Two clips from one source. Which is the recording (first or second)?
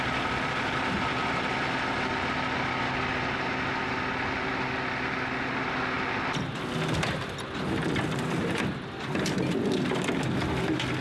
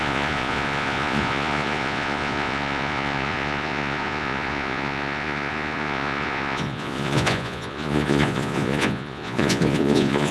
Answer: first